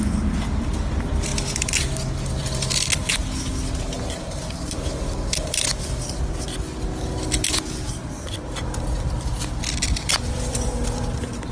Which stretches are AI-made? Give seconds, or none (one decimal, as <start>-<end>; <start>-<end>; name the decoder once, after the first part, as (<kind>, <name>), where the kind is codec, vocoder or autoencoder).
0.0-1.3 (vocoder, BigVGAN v2); 2.3-3.2; 4.0-6.5; 8.1-11.5